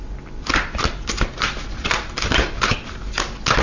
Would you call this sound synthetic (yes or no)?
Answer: no